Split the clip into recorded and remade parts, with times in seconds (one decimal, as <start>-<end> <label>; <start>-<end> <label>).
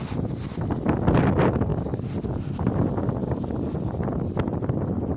0.0-5.2 recorded